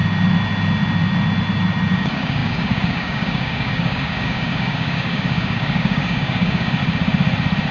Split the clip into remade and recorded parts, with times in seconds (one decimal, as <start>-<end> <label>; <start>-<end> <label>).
0.0-1.9 recorded; 1.9-6.8 remade; 6.8-7.7 recorded